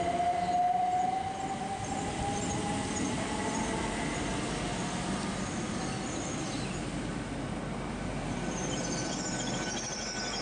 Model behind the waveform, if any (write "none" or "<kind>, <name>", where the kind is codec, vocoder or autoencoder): none